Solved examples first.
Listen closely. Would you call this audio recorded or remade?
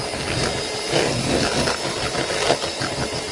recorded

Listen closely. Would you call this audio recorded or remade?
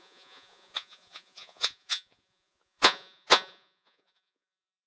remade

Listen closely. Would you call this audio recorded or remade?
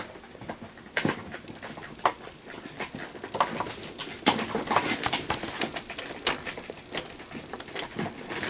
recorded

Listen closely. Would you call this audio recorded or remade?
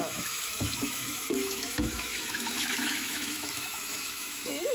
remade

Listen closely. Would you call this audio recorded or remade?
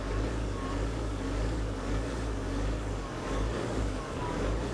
remade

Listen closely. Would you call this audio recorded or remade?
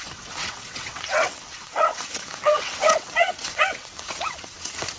remade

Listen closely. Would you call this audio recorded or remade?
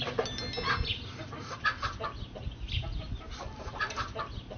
recorded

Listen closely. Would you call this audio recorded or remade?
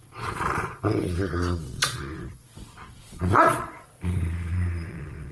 remade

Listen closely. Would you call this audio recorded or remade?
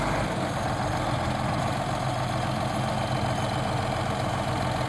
recorded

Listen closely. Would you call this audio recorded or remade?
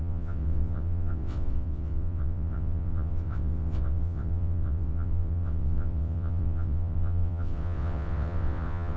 remade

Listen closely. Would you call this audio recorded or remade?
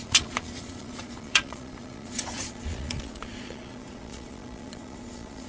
remade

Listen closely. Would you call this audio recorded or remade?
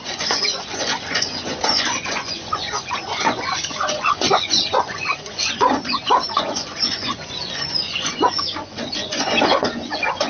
remade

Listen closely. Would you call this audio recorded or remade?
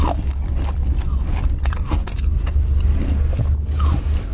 recorded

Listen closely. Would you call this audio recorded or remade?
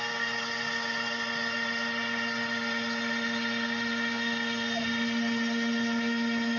recorded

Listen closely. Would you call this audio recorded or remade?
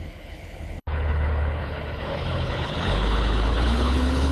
remade